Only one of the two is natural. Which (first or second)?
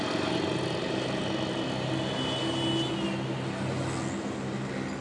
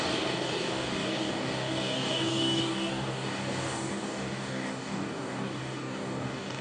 first